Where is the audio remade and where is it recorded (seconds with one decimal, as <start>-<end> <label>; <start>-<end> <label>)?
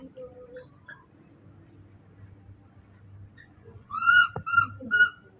0.0-3.3 recorded; 3.3-4.3 remade; 4.3-5.4 recorded